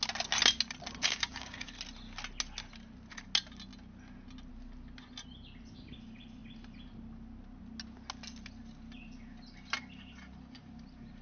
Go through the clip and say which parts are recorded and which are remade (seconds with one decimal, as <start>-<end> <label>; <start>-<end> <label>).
0.0-1.0 recorded; 1.0-1.7 remade; 1.7-11.2 recorded